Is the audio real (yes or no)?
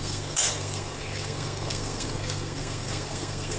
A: no